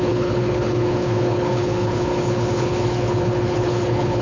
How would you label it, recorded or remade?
remade